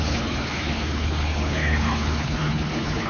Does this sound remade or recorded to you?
remade